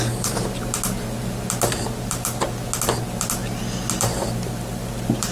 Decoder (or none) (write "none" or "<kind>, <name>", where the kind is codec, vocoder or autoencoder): none